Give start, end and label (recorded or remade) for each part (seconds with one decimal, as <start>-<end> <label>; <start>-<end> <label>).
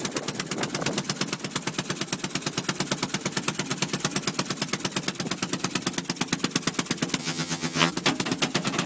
0.0-7.2 recorded; 7.2-7.9 remade; 7.9-8.9 recorded